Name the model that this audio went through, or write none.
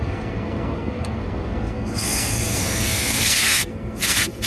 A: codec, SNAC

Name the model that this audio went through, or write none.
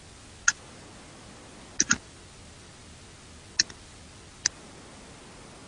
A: none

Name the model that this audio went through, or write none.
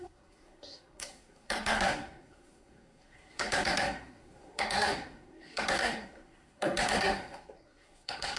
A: codec, SNAC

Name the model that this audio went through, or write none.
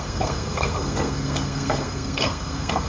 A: codec, SNAC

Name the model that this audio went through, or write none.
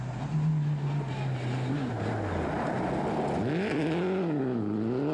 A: none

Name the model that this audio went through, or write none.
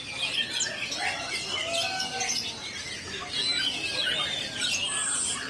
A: none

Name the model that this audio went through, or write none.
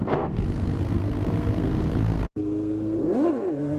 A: codec, SNAC